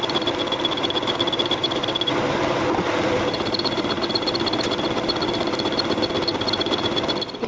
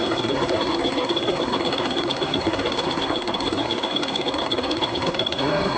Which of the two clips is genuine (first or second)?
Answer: first